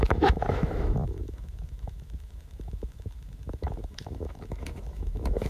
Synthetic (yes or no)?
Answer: yes